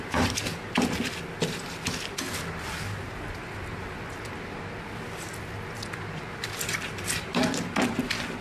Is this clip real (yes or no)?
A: yes